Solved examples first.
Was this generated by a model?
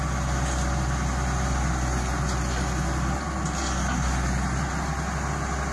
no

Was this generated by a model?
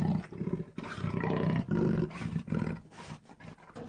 no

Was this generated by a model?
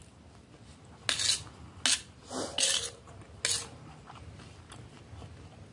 no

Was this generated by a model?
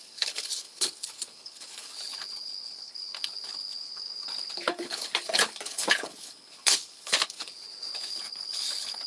yes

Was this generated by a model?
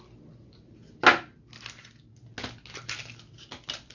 no